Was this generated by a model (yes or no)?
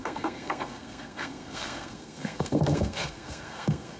yes